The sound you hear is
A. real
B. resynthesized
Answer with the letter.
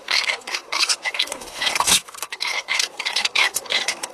B